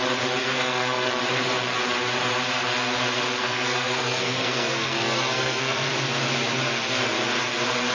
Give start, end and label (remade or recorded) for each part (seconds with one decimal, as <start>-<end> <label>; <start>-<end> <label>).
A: 0.0-0.4 recorded; 0.4-1.1 remade; 1.1-3.4 recorded; 3.4-5.9 remade; 5.9-7.9 recorded